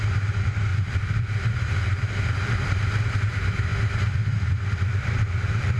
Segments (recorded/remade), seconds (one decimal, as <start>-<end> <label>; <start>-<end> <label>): 0.0-3.7 remade; 3.7-5.3 recorded; 5.3-5.8 remade